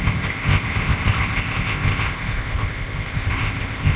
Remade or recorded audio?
remade